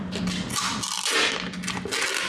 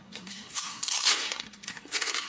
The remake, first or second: second